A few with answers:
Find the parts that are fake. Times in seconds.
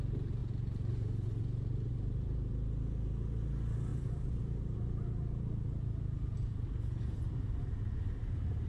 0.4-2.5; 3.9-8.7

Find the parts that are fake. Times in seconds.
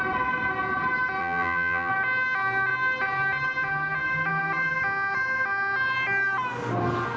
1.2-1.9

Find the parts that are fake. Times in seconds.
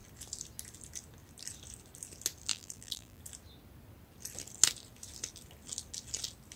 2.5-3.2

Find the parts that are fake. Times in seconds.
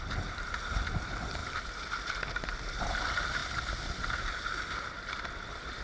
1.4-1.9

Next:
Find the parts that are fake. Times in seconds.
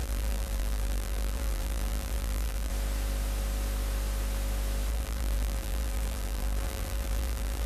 0.0-2.7; 4.9-7.7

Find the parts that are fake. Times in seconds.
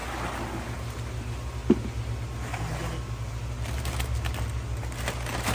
none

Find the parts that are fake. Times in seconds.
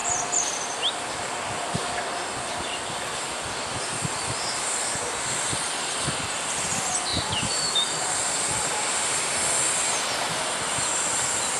none